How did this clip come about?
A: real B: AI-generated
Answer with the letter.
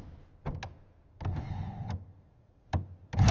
A